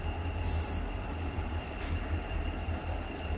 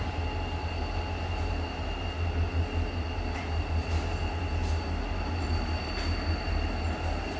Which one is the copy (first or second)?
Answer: first